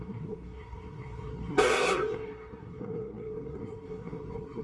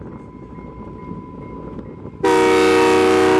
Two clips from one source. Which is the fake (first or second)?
first